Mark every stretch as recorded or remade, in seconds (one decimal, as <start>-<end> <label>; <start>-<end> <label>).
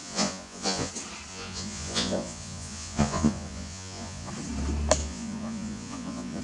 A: 0.0-0.9 remade; 0.9-1.3 recorded; 1.3-4.3 remade; 4.3-5.0 recorded; 5.0-6.4 remade